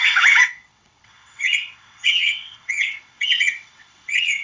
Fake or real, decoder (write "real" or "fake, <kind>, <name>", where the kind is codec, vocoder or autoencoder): fake, vocoder, WaveNeXt